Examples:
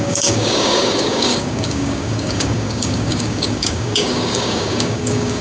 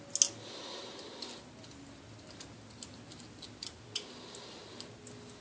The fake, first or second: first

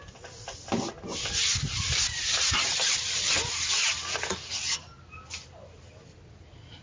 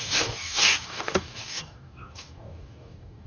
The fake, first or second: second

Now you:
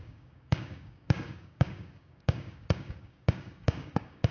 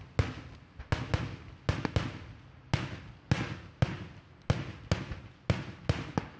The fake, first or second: first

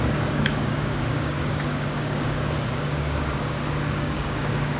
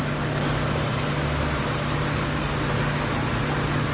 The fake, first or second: first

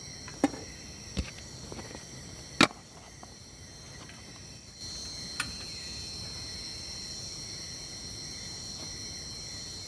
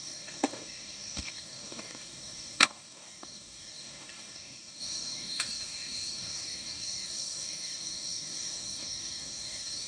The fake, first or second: second